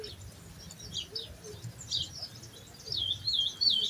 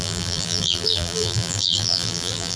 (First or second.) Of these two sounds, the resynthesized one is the second